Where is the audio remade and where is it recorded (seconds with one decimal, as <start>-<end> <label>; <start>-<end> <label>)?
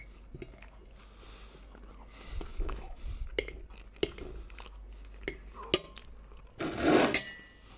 0.0-2.5 recorded; 2.5-3.0 remade; 3.0-7.8 recorded